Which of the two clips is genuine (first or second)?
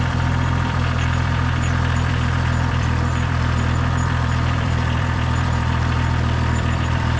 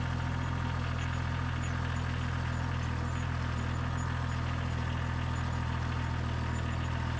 second